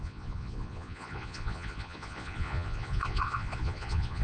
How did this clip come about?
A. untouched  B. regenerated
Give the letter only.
B